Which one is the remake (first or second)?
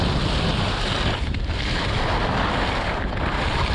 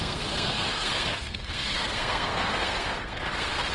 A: second